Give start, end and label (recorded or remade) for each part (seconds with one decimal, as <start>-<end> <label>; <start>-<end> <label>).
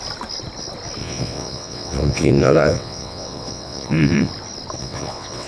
0.0-1.0 recorded; 1.0-4.3 remade; 4.3-4.8 recorded; 4.8-5.5 remade